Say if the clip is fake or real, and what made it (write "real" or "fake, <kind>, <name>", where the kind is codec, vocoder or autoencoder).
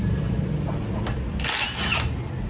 real